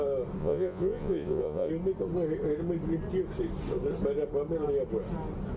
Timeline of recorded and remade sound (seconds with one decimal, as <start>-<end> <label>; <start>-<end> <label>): 0.0-0.4 recorded; 0.4-1.7 remade; 1.7-5.6 recorded